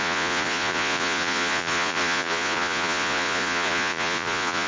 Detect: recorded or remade remade